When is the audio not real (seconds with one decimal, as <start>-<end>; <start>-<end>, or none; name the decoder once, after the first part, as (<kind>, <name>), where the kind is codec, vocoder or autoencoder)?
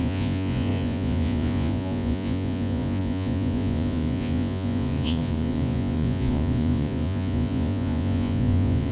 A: 0.0-8.9 (vocoder, Vocos)